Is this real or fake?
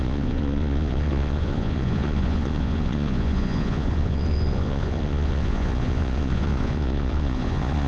fake